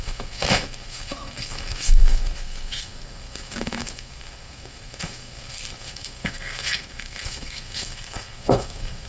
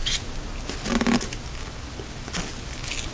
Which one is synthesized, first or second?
first